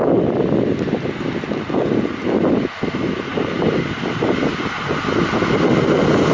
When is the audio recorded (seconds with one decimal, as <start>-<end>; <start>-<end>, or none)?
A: 0.0-3.3; 3.8-6.3